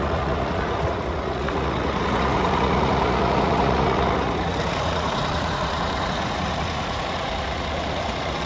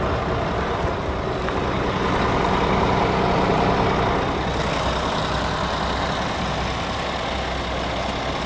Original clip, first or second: second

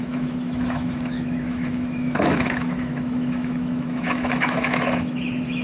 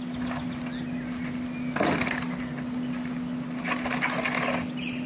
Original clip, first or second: second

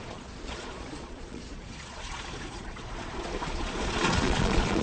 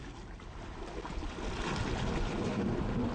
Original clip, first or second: second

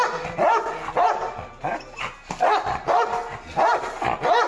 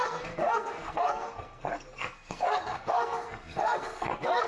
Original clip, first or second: first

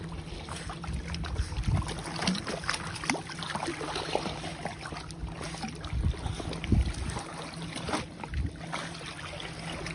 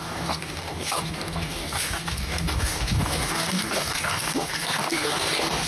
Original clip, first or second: first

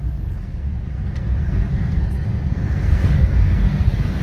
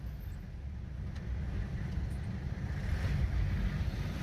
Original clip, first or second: second